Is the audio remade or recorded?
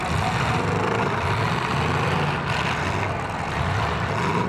recorded